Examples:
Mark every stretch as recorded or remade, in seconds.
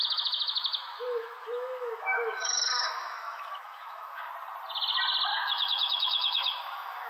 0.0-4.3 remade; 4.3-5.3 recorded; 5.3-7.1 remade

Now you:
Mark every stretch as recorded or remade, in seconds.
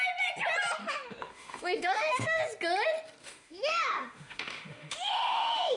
0.0-0.8 recorded; 0.8-2.4 remade; 2.4-3.2 recorded; 3.2-5.8 remade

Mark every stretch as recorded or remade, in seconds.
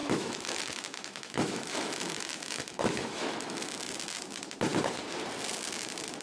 0.0-3.7 remade; 3.7-6.2 recorded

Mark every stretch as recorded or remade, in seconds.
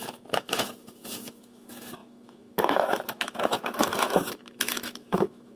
0.0-5.6 remade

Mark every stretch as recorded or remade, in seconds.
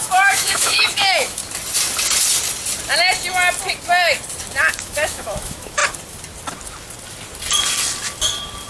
0.0-1.4 remade; 1.4-4.7 recorded; 4.7-5.8 remade; 5.8-8.7 recorded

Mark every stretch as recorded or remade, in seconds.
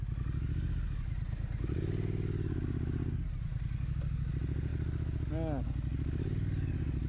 0.0-7.1 recorded